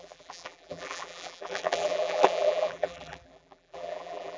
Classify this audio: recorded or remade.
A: remade